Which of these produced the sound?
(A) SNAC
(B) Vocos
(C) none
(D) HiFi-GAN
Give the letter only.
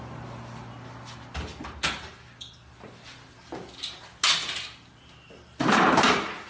C